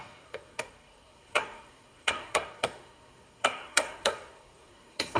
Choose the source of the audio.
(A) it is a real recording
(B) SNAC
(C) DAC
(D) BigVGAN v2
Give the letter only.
B